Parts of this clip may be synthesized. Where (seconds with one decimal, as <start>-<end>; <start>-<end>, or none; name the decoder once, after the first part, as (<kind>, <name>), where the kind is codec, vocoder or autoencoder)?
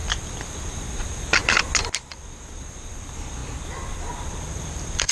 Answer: 0.0-1.4 (vocoder, BigVGAN v2); 2.1-3.4; 4.3-5.1